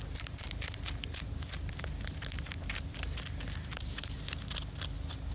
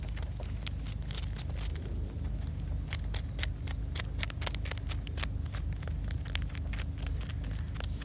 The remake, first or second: first